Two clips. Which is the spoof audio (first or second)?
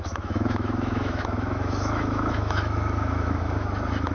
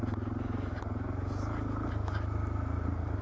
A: first